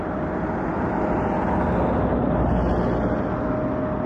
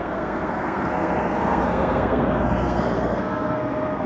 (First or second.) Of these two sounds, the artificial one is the second